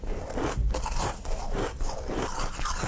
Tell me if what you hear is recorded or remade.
recorded